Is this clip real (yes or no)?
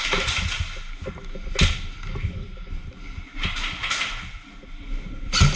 yes